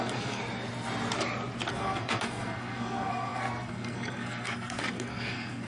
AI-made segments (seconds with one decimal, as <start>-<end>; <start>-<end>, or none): 0.0-0.4; 1.7-5.7